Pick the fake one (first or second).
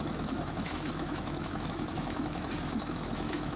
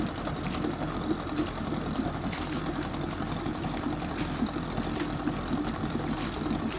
first